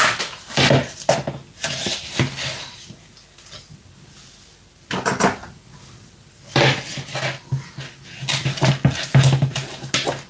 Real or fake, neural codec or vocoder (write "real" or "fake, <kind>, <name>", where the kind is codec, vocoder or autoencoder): real